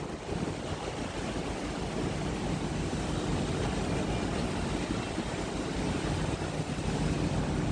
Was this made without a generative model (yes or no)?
yes